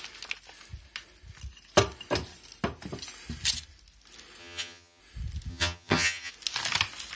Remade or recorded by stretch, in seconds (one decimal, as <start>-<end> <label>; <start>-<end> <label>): 0.0-4.4 recorded; 4.4-5.0 remade; 5.0-5.5 recorded; 5.5-6.3 remade; 6.3-7.2 recorded